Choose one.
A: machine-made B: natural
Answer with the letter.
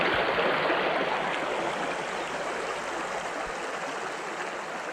B